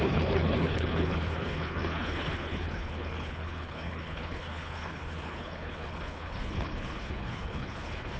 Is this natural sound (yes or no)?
no